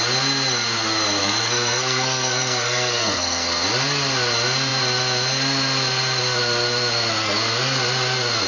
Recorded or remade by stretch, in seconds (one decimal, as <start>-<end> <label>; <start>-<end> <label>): 0.0-1.2 recorded; 1.2-3.5 remade; 3.5-8.5 recorded